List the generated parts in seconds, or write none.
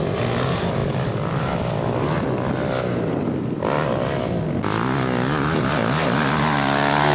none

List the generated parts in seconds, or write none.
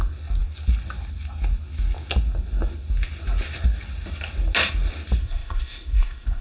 5.2-6.4 (codec, ZipCodec)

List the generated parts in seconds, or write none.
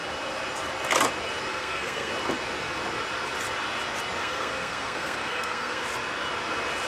1.5-2.1 (codec, SNAC); 4.2-5.8